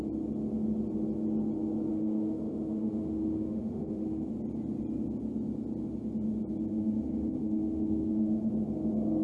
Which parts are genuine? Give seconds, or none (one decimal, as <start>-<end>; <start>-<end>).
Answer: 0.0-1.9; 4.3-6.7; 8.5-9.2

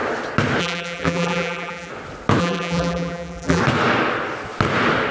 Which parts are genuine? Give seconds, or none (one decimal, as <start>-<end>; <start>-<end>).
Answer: 0.0-0.6; 1.9-2.4; 3.6-5.1

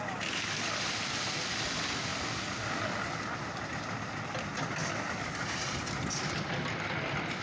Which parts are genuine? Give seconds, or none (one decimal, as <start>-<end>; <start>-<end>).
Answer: 0.0-7.4

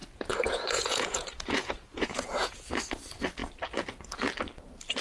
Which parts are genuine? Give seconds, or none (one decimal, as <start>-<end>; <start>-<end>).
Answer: 2.6-5.0

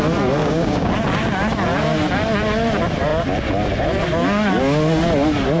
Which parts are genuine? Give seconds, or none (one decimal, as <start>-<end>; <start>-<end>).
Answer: 0.0-0.4; 0.9-5.6

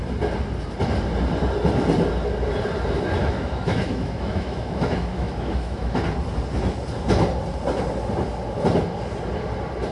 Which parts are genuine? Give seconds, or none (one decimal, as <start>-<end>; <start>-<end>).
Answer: 0.0-3.2; 6.0-9.9